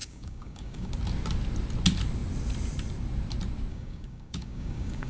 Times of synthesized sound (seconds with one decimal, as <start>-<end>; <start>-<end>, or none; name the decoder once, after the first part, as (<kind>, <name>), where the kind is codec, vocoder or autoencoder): 0.0-0.9 (codec, DAC); 3.7-5.1

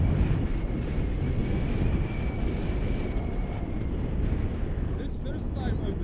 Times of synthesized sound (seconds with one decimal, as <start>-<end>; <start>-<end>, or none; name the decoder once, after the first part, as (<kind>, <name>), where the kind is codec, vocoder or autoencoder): none

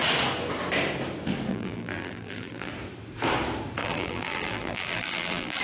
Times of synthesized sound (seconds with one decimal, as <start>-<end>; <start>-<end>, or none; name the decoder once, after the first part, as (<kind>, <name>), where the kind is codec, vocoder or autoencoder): 1.5-2.7 (vocoder, BigVGAN v2); 3.8-5.6

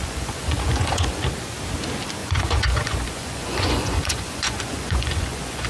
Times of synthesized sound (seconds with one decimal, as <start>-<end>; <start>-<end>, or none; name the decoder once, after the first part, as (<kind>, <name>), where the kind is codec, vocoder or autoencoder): 0.0-1.2 (vocoder, Vocos); 2.2-5.7

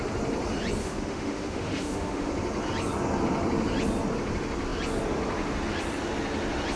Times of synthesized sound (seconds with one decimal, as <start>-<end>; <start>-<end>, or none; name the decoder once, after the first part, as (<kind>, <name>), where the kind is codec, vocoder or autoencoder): 0.8-2.3 (autoencoder, DAC-VAE)

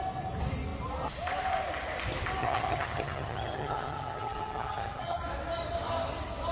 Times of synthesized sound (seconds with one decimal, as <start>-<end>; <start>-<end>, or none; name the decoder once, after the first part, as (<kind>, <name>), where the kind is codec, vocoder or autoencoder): 2.4-5.2 (vocoder, HiFi-GAN)

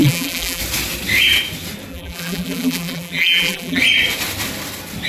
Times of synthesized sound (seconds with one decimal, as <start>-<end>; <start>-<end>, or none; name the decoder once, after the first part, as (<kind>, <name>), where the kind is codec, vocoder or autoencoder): 0.0-0.6 (vocoder, BigVGAN v2); 1.9-3.8